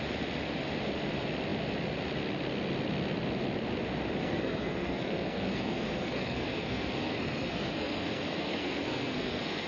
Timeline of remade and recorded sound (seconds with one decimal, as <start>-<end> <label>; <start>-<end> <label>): 0.0-4.2 recorded; 4.2-9.7 remade